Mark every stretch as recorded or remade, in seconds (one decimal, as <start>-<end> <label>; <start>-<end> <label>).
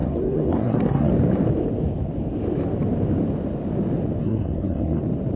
0.0-1.1 remade; 1.1-4.2 recorded; 4.2-5.0 remade; 5.0-5.4 recorded